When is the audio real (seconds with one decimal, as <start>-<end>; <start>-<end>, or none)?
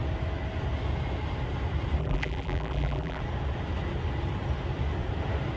0.0-2.0; 3.2-5.6